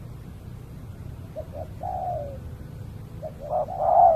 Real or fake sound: real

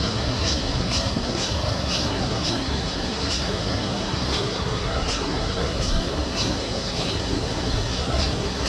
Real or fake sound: fake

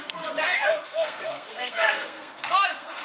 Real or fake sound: fake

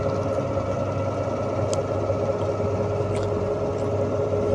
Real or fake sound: real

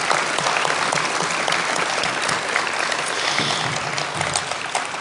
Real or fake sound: real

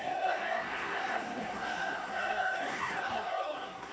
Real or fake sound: fake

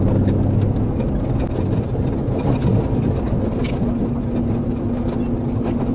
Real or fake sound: real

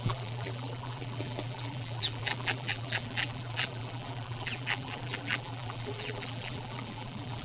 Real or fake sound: fake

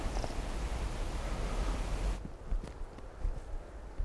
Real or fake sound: real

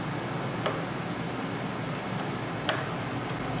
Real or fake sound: real